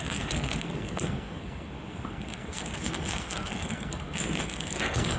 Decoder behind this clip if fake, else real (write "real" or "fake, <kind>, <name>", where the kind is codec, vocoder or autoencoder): fake, codec, SNAC